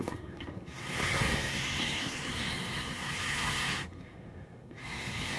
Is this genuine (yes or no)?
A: no